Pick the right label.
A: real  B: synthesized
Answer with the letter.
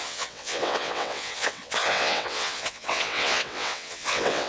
B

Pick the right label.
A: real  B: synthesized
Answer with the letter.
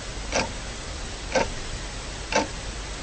A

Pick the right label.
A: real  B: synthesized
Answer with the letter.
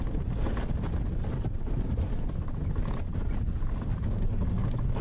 A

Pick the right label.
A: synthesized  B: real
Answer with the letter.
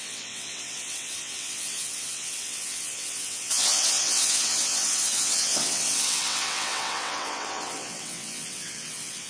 A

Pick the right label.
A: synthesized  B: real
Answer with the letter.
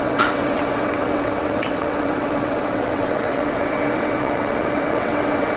A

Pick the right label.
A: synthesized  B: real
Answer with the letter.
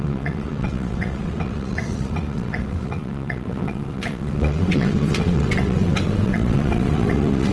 A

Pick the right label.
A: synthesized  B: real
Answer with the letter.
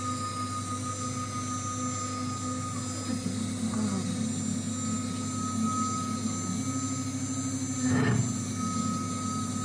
B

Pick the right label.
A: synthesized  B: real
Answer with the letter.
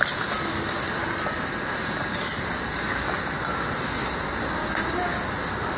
B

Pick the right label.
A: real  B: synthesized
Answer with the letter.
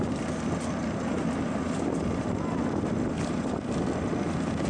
A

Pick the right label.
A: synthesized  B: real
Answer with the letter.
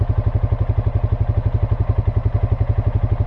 B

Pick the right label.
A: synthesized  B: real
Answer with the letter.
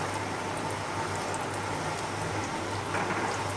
B